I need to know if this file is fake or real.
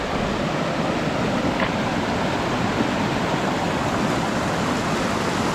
real